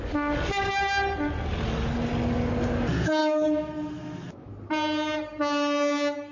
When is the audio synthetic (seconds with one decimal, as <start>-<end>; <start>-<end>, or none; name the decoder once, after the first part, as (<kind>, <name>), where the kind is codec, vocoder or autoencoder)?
3.2-4.5 (autoencoder, DAC-VAE)